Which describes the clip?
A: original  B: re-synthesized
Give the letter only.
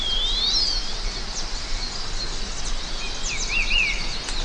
A